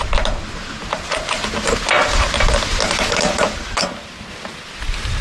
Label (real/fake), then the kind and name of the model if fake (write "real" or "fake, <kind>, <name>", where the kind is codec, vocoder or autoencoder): real